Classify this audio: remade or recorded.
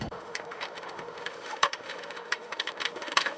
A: remade